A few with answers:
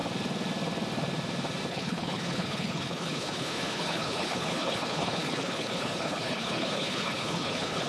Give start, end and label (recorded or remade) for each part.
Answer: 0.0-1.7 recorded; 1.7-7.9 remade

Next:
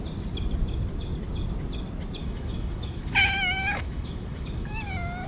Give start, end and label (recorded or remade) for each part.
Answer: 0.0-2.2 recorded; 2.2-4.8 remade; 4.8-5.3 recorded

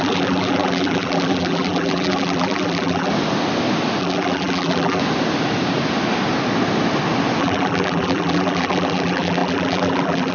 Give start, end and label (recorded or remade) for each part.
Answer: 0.0-3.1 remade; 3.1-4.0 recorded; 4.0-5.0 remade; 5.0-7.4 recorded; 7.4-10.3 remade